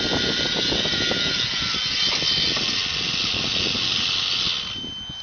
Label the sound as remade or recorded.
recorded